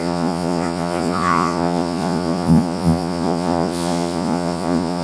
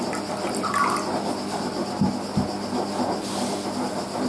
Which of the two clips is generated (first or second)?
first